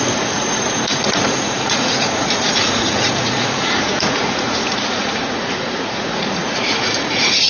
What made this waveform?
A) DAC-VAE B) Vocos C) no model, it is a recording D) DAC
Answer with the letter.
B